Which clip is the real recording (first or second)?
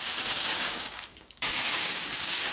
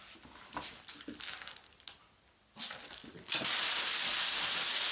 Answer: second